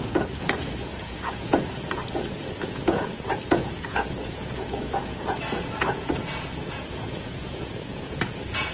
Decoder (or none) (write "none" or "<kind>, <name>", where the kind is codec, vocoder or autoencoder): vocoder, Vocos